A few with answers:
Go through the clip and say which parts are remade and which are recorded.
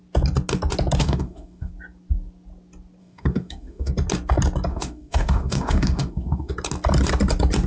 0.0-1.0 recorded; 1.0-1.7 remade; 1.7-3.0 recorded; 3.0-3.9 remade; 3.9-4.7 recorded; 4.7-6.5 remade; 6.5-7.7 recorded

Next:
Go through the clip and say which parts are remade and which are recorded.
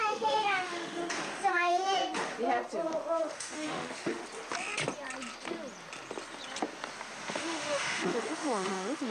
0.0-1.0 remade; 1.0-1.5 recorded; 1.5-2.0 remade; 2.0-3.2 recorded; 3.2-4.2 remade; 4.2-7.3 recorded; 7.3-9.1 remade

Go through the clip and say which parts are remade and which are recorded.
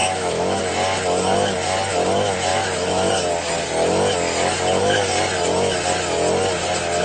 0.0-0.6 remade; 0.6-2.5 recorded; 2.5-3.1 remade; 3.1-7.0 recorded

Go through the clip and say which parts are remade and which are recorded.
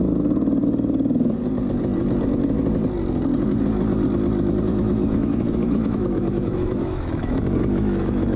0.0-4.7 recorded; 4.7-8.4 remade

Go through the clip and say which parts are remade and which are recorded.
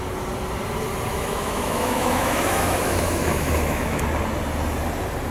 0.0-1.1 recorded; 1.1-4.0 remade; 4.0-5.3 recorded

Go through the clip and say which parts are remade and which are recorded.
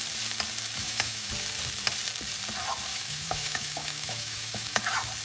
0.0-0.8 recorded; 0.8-1.3 remade; 1.3-2.9 recorded; 2.9-4.8 remade; 4.8-5.2 recorded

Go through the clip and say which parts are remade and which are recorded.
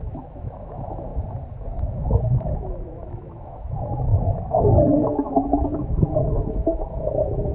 0.0-1.1 remade; 1.1-1.8 recorded; 1.8-7.5 remade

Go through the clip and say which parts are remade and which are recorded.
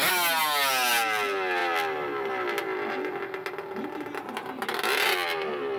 0.0-5.8 recorded